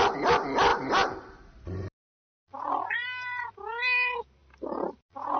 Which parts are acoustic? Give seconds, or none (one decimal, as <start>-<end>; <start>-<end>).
0.0-0.7; 3.4-5.4